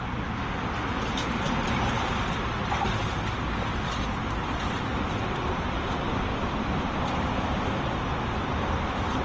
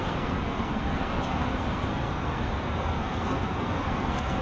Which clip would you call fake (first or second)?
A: second